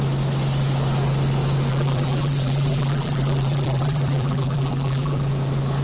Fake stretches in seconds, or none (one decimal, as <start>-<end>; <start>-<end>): 1.7-5.2